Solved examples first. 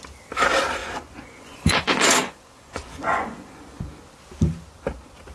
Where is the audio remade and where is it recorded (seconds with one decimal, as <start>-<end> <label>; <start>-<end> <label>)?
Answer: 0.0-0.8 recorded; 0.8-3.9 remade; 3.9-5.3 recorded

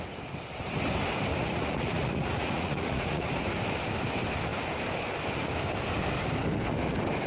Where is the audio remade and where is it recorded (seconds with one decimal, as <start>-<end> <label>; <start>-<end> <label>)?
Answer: 0.0-1.3 recorded; 1.3-3.3 remade; 3.3-7.3 recorded

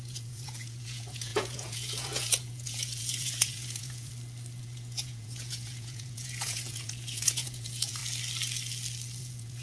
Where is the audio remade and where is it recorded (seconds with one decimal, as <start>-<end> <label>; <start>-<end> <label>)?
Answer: 0.0-4.1 remade; 4.1-4.6 recorded; 4.6-8.0 remade; 8.0-9.2 recorded; 9.2-9.6 remade

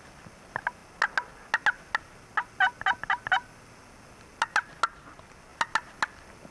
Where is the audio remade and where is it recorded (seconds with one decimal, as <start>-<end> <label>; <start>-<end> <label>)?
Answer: 0.0-6.5 recorded